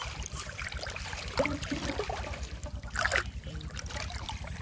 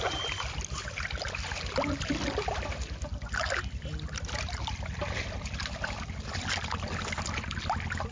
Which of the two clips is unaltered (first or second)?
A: second